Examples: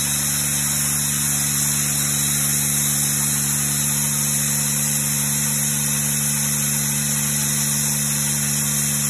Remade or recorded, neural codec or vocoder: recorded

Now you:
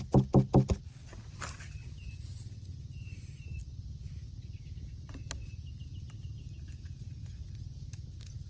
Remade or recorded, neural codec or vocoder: recorded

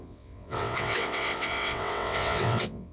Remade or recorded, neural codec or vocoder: remade, vocoder, WaveNeXt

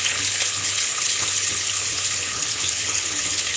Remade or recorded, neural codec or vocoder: remade, codec, HILCodec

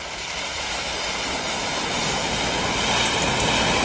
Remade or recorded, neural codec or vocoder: recorded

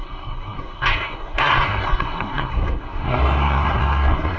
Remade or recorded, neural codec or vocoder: remade, codec, SNAC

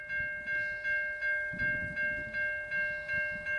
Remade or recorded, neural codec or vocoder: recorded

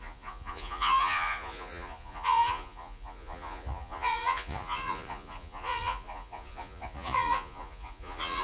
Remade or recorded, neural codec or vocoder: remade, vocoder, Vocos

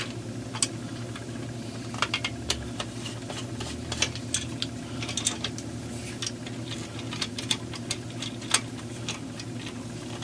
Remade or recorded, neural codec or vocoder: recorded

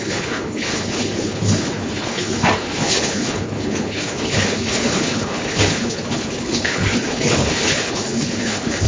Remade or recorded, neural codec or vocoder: remade, codec, HILCodec